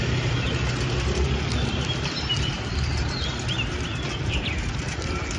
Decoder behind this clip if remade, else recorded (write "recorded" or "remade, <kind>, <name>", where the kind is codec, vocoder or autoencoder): recorded